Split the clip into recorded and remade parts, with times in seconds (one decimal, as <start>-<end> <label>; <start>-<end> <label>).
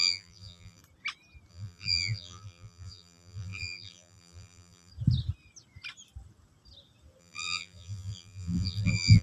0.0-0.8 remade; 0.8-1.5 recorded; 1.5-4.9 remade; 4.9-7.2 recorded; 7.2-9.2 remade